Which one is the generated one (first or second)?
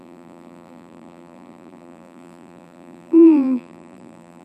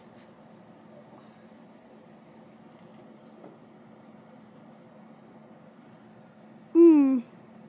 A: first